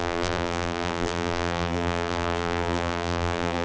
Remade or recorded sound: remade